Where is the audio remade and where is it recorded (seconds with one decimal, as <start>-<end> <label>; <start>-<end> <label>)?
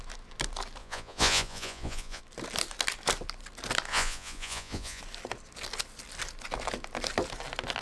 0.0-0.8 recorded; 0.8-2.2 remade; 2.2-3.9 recorded; 3.9-5.0 remade; 5.0-7.8 recorded